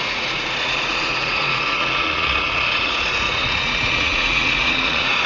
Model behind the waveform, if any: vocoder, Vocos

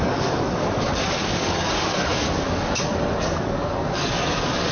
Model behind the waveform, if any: codec, DAC